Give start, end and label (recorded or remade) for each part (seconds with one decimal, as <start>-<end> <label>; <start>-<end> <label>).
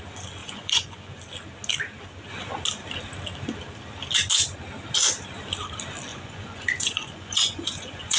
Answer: 0.0-0.4 recorded; 0.4-1.2 remade; 1.2-6.1 recorded; 6.1-8.2 remade